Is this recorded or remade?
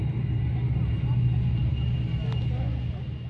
recorded